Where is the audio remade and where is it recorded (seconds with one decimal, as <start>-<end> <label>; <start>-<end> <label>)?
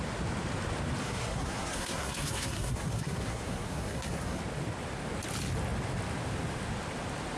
0.0-1.0 recorded; 1.0-4.4 remade; 4.4-7.4 recorded